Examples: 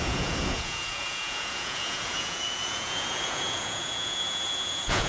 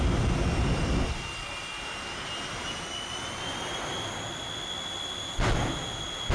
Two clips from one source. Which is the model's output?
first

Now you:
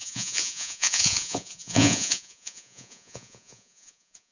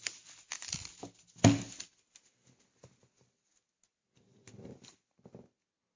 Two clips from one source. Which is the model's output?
first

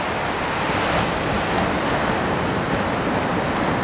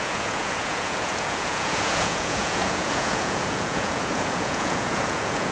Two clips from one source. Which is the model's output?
second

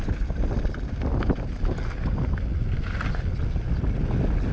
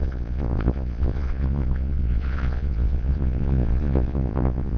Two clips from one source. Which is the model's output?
second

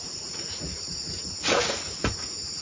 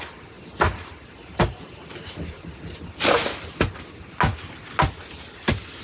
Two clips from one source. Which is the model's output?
first